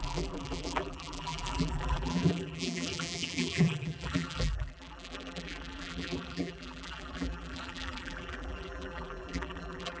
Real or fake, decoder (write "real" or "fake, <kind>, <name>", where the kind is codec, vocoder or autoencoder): fake, vocoder, BigVGAN v2